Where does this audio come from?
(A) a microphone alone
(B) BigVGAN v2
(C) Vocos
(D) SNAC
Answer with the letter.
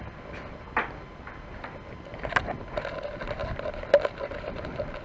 A